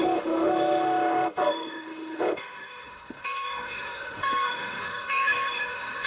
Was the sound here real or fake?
fake